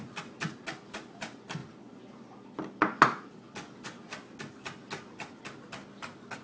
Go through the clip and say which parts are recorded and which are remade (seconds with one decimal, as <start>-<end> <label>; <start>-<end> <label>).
0.0-6.4 recorded